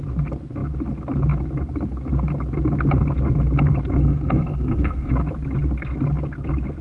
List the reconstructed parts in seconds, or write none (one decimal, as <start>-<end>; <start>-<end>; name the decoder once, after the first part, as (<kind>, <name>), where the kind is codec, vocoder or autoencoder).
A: 4.0-5.1 (codec, SNAC)